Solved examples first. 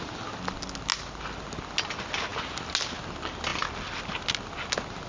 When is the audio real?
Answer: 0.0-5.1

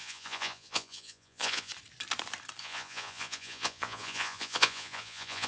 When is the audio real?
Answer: 1.7-2.6